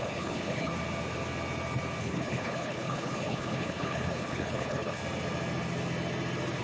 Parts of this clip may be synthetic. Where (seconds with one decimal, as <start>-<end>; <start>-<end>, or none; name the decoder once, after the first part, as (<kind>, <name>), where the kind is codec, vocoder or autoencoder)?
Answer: 0.0-0.7 (codec, HILCodec); 2.0-5.0